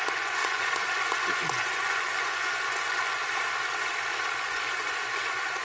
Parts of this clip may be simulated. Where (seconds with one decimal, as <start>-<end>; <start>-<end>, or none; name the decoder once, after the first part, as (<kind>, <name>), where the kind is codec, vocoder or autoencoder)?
0.0-3.2 (vocoder, Vocos); 4.4-5.6